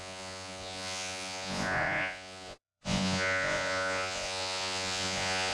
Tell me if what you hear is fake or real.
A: fake